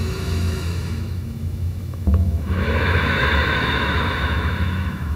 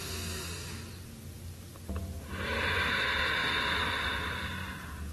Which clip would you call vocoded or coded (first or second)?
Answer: first